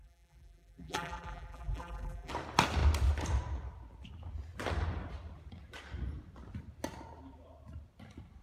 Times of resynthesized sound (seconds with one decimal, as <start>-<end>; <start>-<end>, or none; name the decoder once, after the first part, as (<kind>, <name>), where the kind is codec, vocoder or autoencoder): 0.0-2.3 (vocoder, BigVGAN v2)